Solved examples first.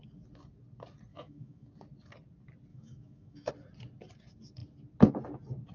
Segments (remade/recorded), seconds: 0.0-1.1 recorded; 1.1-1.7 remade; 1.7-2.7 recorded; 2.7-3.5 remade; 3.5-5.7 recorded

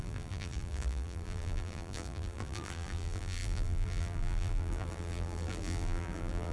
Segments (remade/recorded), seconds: 0.0-6.5 remade

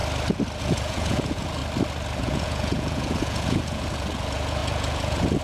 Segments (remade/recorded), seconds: 0.0-0.6 recorded; 0.6-1.6 remade; 1.6-2.2 recorded; 2.2-5.4 remade